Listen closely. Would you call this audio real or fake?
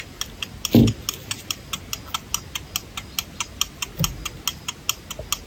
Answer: real